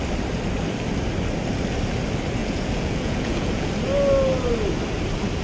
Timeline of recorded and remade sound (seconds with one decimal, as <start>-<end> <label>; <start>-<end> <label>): 0.0-2.4 recorded; 2.4-3.7 remade; 3.7-5.4 recorded

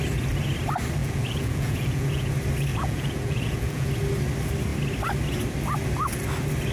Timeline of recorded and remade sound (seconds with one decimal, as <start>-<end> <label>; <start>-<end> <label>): 0.0-1.0 recorded; 1.0-2.3 remade; 2.3-2.7 recorded; 2.7-3.9 remade; 3.9-6.7 recorded

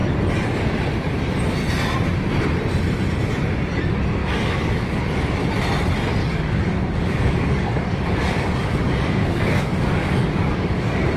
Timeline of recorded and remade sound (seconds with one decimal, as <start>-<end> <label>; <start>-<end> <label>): 0.0-4.2 recorded; 4.2-5.0 remade; 5.0-6.2 recorded; 6.2-11.2 remade

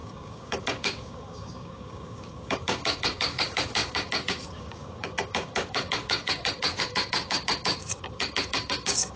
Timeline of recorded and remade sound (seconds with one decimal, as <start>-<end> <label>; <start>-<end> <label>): 0.0-9.2 remade

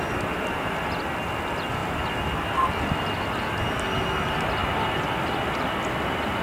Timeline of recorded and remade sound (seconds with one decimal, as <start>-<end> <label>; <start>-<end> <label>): 0.0-1.8 recorded; 1.8-3.6 remade; 3.6-4.6 recorded; 4.6-5.5 remade; 5.5-6.4 recorded

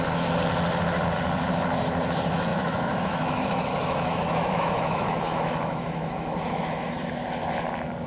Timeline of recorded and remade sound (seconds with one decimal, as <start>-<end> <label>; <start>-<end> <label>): 0.0-2.5 recorded; 2.5-6.9 remade; 6.9-8.1 recorded